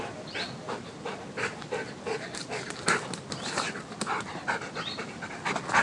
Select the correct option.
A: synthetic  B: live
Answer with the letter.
B